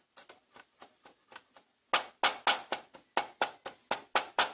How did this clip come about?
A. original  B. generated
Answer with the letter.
A